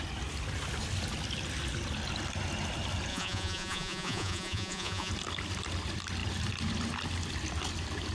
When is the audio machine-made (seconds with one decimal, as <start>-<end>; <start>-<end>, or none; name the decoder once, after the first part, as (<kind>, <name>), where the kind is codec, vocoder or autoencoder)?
3.1-5.1 (vocoder, Vocos)